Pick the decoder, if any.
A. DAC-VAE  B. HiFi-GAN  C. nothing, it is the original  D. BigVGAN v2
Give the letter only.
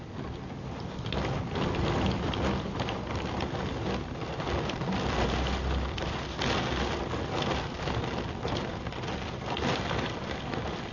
C